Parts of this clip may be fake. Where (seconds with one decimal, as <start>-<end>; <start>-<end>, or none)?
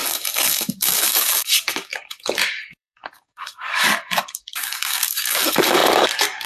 0.0-6.5